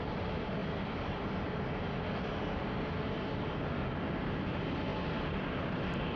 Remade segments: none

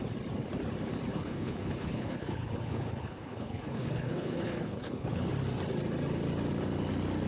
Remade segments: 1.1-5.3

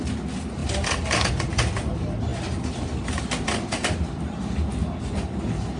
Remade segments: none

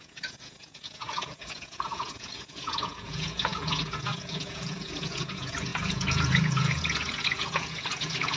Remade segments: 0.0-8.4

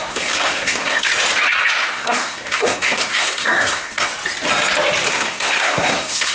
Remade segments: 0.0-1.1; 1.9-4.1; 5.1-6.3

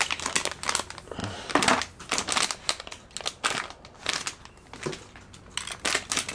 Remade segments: none

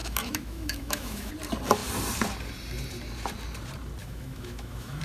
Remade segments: 0.0-1.3; 4.0-5.0

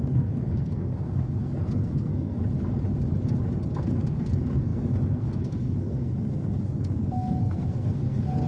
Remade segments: 0.0-2.4; 3.7-8.5